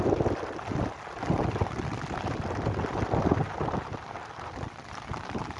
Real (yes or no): yes